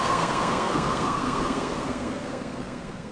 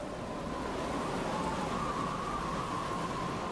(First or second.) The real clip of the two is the second